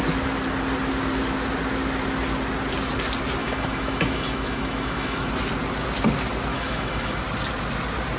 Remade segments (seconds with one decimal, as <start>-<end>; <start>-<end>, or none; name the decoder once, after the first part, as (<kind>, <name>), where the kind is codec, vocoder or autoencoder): 3.4-5.3 (autoencoder, DAC-VAE); 6.5-7.2